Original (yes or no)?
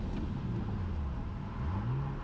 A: yes